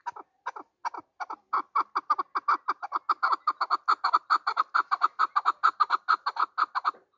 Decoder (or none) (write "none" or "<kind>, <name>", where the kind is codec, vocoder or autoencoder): none